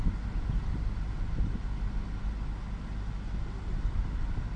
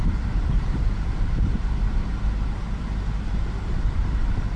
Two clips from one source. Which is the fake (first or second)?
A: second